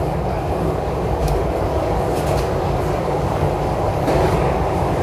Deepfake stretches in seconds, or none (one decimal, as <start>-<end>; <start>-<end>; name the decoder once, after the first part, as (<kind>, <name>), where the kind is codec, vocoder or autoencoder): 0.0-5.0 (codec, DAC)